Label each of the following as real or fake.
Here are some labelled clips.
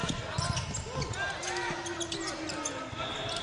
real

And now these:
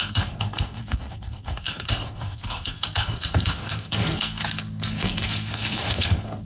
fake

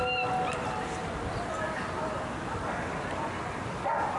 real